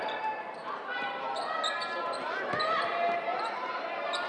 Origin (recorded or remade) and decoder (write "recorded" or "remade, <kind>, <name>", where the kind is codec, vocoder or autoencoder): recorded